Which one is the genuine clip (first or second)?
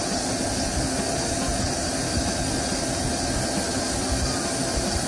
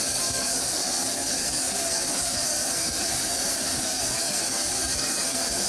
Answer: first